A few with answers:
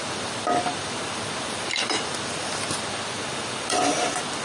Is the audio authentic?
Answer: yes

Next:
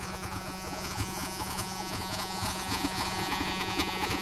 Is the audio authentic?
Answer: no